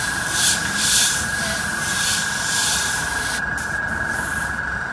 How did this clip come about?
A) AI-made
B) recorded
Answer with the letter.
A